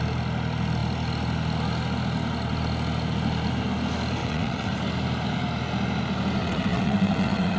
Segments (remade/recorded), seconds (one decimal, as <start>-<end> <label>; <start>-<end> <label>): 0.0-4.2 recorded; 4.2-4.7 remade; 4.7-6.4 recorded; 6.4-7.6 remade